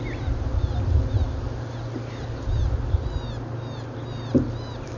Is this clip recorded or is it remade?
recorded